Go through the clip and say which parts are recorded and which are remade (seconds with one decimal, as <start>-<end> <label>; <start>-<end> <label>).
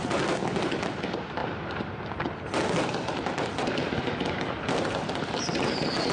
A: 0.0-6.1 recorded